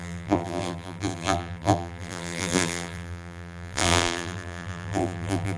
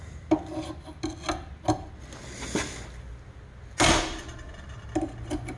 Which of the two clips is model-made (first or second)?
first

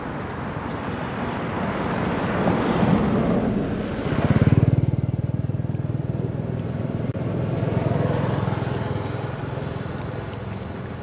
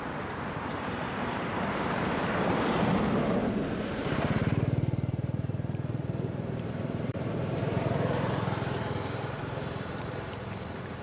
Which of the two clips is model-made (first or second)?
second